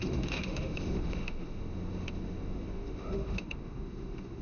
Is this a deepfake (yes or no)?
yes